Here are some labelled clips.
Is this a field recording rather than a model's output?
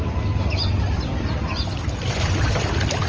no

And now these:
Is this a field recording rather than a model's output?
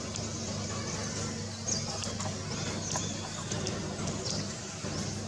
yes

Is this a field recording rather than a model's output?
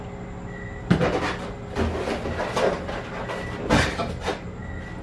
yes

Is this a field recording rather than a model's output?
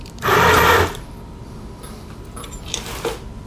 no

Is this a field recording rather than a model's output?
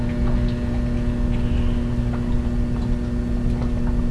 yes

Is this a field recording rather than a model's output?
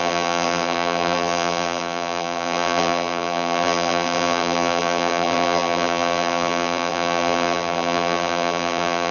no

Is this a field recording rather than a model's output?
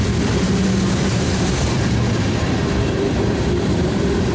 no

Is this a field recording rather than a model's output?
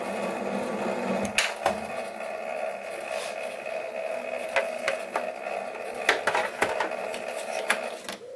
yes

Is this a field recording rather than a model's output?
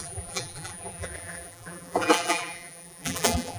no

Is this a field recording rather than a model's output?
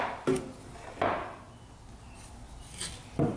yes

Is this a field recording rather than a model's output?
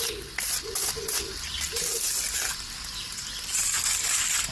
yes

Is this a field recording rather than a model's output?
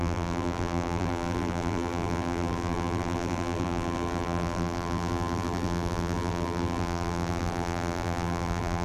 no